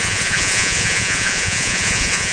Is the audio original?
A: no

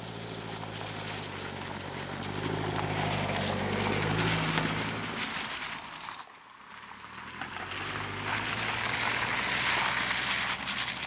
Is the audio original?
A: yes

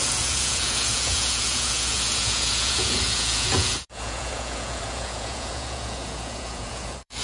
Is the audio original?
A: no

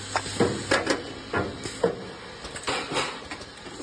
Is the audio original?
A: yes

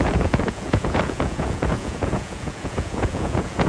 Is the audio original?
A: no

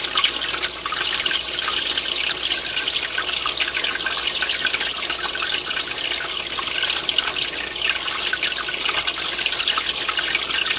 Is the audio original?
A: yes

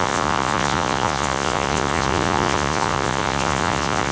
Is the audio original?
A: no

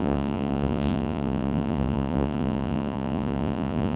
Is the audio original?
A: no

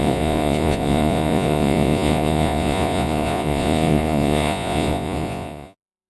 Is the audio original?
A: no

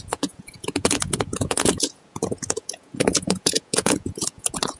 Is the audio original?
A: no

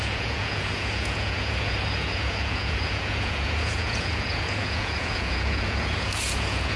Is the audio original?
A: no